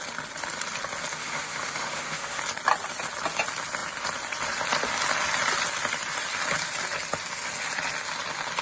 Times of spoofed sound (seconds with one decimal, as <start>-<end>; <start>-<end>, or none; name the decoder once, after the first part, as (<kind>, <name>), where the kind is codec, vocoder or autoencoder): 1.1-2.4 (autoencoder, DAC-VAE)